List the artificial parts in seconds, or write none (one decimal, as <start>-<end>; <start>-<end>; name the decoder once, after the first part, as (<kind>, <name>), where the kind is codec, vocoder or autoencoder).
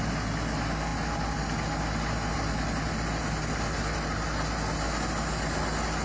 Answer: none